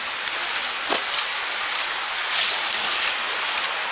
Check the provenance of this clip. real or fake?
real